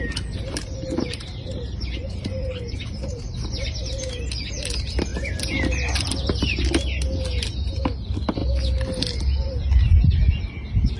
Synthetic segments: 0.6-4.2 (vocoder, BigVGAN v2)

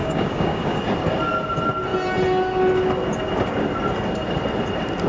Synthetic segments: 0.0-0.8 (codec, DAC)